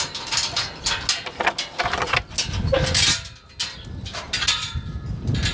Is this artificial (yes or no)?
no